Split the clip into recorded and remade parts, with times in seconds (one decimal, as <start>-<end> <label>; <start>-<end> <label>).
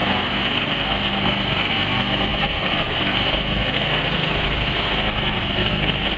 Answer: 0.0-6.2 remade